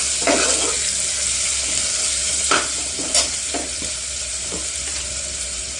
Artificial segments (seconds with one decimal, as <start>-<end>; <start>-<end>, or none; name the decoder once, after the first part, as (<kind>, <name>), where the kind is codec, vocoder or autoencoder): 2.2-5.8 (vocoder, BigVGAN v2)